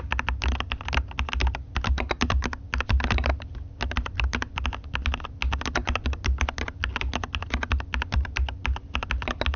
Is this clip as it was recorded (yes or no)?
yes